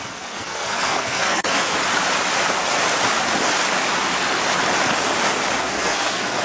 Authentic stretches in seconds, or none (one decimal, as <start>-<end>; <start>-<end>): 1.8-5.6